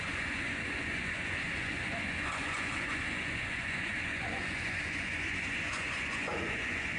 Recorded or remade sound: remade